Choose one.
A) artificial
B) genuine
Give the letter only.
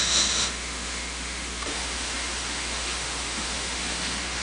A